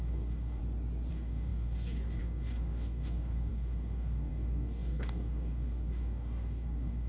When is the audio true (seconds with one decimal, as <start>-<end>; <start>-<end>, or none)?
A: 0.6-1.1